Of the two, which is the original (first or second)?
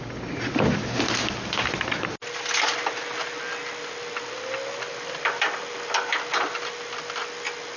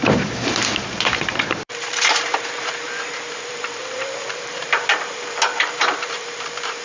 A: first